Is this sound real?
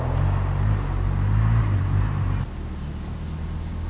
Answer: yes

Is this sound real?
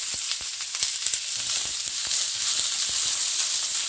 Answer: yes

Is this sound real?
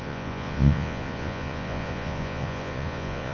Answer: no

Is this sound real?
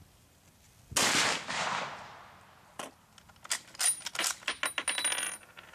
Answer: yes